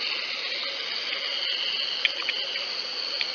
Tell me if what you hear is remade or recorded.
recorded